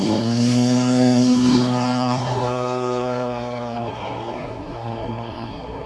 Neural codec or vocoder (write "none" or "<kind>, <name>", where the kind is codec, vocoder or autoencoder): codec, SNAC